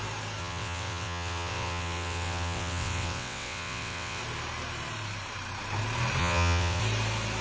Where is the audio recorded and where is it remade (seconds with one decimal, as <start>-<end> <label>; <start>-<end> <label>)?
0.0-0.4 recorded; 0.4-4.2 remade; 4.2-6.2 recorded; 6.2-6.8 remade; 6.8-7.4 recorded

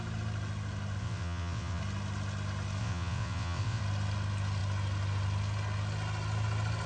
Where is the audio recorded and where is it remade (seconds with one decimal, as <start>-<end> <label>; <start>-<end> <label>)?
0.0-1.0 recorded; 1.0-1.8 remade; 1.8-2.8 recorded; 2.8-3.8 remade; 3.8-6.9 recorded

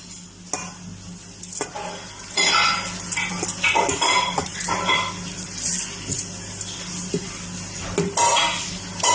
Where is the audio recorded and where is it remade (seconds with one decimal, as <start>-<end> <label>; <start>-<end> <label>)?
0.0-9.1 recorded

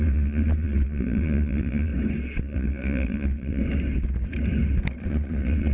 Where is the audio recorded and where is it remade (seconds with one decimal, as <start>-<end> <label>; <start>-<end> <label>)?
0.0-1.9 remade; 1.9-2.4 recorded; 2.4-3.6 remade; 3.6-5.0 recorded; 5.0-5.7 remade